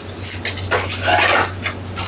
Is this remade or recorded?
recorded